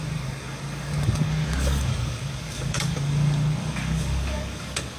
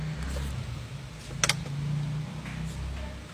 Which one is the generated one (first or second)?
first